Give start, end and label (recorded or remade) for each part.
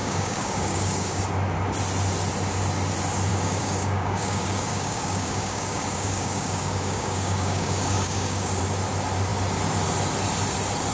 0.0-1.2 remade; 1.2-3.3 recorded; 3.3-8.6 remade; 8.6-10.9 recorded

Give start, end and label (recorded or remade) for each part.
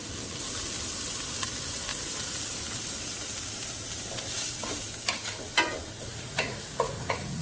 0.0-1.9 recorded; 1.9-2.4 remade; 2.4-6.1 recorded; 6.1-7.4 remade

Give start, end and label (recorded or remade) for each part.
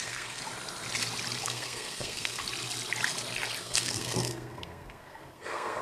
0.0-0.4 remade; 0.4-1.4 recorded; 1.4-2.4 remade; 2.4-3.6 recorded; 3.6-5.8 remade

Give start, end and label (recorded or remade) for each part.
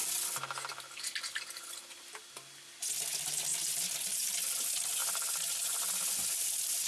0.0-3.5 recorded; 3.5-4.3 remade; 4.3-5.0 recorded; 5.0-5.9 remade; 5.9-6.9 recorded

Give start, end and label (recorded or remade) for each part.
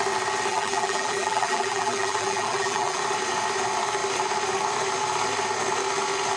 0.0-0.5 recorded; 0.5-3.0 remade; 3.0-6.4 recorded